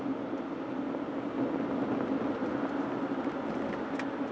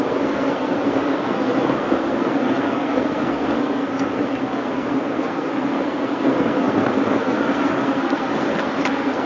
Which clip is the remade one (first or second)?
second